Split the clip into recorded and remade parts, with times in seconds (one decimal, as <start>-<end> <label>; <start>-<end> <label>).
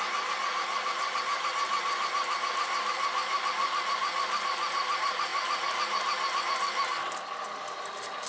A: 0.0-8.3 recorded